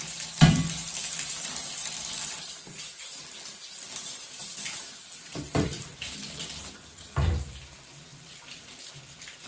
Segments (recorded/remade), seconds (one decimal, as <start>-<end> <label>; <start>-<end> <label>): 0.0-1.0 recorded; 1.0-2.6 remade; 2.6-4.4 recorded; 4.4-7.3 remade; 7.3-9.5 recorded